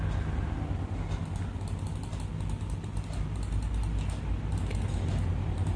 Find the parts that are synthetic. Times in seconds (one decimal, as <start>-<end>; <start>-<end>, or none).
none